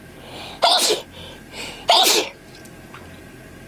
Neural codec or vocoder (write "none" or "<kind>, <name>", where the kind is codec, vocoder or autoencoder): none